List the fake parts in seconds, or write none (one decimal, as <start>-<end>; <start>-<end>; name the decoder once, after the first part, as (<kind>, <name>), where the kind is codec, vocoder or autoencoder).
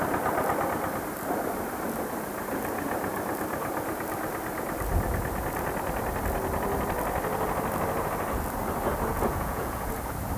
9.1-10.0 (vocoder, Vocos)